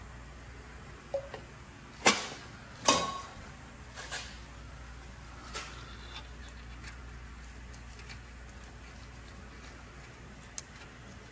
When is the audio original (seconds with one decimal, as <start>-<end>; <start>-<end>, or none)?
0.0-11.3